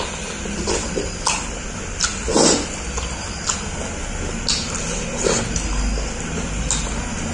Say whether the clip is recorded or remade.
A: recorded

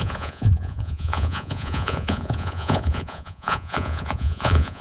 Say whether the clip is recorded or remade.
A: remade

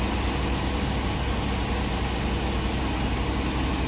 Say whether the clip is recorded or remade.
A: recorded